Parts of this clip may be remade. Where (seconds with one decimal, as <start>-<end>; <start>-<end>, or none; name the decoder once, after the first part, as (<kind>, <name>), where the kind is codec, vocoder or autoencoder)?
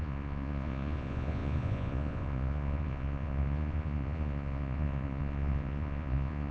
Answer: 0.0-6.5 (vocoder, Vocos)